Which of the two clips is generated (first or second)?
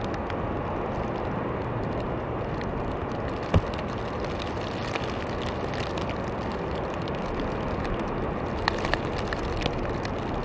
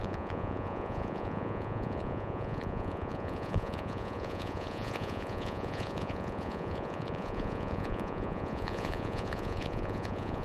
second